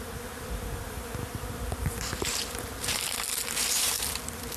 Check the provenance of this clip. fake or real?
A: fake